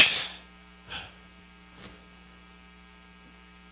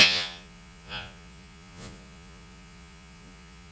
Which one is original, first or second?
first